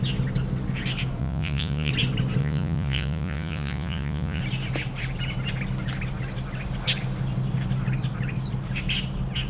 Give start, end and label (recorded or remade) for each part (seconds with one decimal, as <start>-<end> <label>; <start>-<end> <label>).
0.0-1.2 recorded; 1.2-1.9 remade; 1.9-2.4 recorded; 2.4-4.4 remade; 4.4-9.5 recorded